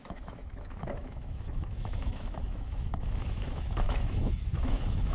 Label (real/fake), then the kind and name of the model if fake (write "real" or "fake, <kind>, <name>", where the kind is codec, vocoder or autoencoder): fake, autoencoder, DAC-VAE